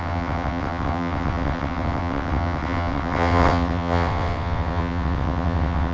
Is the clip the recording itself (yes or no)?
no